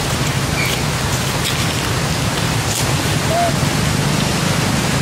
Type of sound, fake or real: real